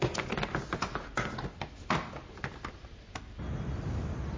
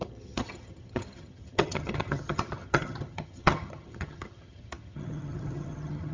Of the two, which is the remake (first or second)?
second